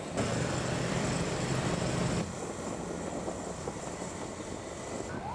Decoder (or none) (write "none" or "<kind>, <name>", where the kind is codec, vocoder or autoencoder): none